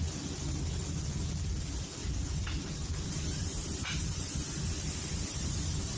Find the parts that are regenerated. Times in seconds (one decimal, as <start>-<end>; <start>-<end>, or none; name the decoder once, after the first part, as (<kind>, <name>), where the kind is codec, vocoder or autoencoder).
2.0-5.6 (vocoder, BigVGAN v2)